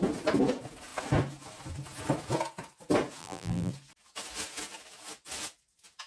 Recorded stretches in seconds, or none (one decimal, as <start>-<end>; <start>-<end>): 0.0-3.2; 3.7-6.1